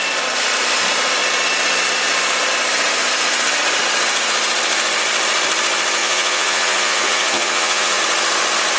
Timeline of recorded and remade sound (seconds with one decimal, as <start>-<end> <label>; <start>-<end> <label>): 0.0-6.0 recorded; 6.0-8.0 remade; 8.0-8.8 recorded